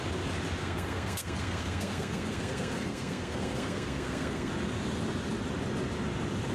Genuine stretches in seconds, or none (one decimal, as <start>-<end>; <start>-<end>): 0.0-0.6; 4.5-6.5